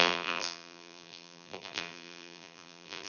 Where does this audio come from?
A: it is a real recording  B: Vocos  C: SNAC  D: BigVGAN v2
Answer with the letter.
D